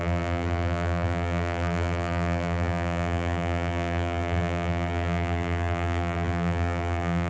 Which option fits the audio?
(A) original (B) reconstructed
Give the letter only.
B